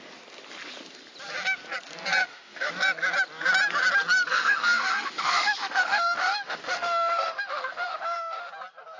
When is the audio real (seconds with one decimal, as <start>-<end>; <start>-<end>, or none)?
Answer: 0.0-2.2; 2.7-4.3; 8.5-9.0